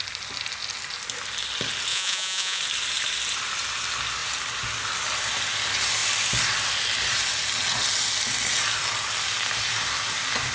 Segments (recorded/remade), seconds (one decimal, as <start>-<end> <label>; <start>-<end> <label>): 0.0-1.9 recorded; 1.9-2.6 remade; 2.6-10.5 recorded